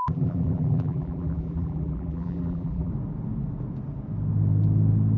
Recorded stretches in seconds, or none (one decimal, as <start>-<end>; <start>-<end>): 2.9-5.2

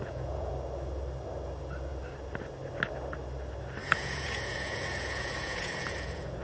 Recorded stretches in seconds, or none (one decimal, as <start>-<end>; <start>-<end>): 0.5-3.8